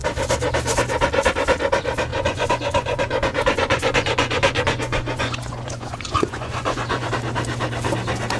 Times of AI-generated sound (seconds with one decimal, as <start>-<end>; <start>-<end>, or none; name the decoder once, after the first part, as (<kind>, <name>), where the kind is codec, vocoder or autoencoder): 2.1-7.1 (vocoder, Vocos)